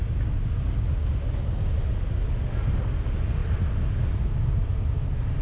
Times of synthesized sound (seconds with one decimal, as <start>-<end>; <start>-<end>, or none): none